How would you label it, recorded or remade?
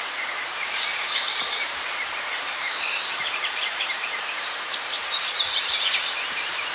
remade